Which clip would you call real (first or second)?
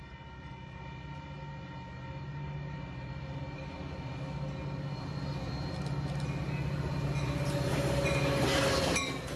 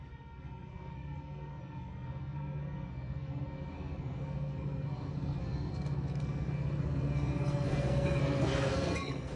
first